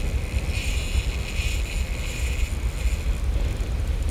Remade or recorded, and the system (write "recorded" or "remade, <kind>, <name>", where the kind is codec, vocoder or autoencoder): recorded